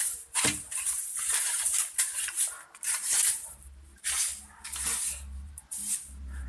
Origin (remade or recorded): remade